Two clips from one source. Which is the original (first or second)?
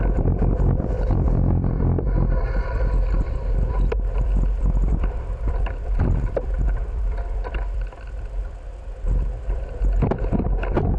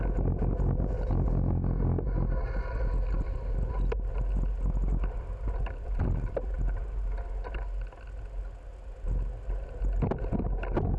second